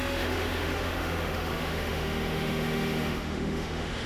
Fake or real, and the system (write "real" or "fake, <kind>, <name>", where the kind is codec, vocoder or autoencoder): fake, autoencoder, DAC-VAE